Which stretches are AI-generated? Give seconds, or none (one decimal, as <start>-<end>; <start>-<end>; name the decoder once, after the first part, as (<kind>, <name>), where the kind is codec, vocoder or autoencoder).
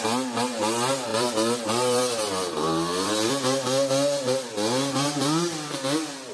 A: 1.1-3.3 (vocoder, BigVGAN v2)